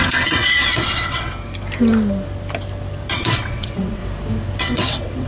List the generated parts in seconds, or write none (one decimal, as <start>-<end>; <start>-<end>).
0.0-1.3; 3.1-4.0; 4.6-5.3